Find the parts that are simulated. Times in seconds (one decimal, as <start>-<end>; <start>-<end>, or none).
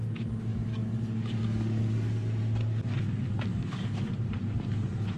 0.5-1.8; 3.5-4.1